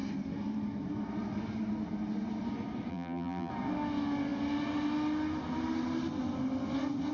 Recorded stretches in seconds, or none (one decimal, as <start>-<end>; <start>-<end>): 0.0-2.9; 3.5-7.1